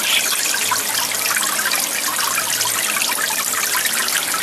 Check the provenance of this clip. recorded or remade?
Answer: recorded